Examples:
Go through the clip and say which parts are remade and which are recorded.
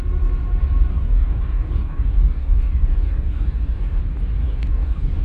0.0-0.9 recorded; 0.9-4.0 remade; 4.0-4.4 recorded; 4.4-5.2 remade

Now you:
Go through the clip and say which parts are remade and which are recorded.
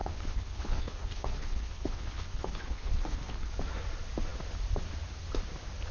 0.0-3.5 remade; 3.5-5.9 recorded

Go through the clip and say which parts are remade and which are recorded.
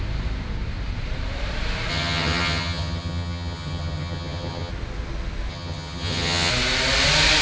0.0-1.9 recorded; 1.9-4.7 remade; 4.7-5.5 recorded; 5.5-6.5 remade; 6.5-7.4 recorded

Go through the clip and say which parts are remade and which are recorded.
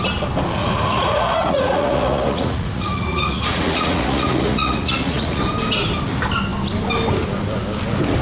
0.0-0.6 recorded; 0.6-5.4 remade; 5.4-8.2 recorded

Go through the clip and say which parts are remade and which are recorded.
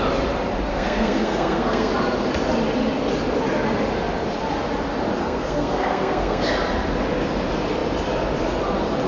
0.0-0.7 recorded; 0.7-1.9 remade; 1.9-5.2 recorded; 5.2-6.5 remade; 6.5-9.1 recorded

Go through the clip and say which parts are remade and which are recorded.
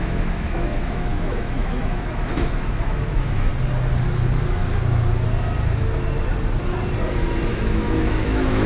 0.0-3.5 remade; 3.5-7.5 recorded; 7.5-8.7 remade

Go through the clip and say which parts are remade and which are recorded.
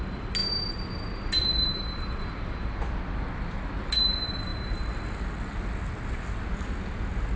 0.0-7.4 recorded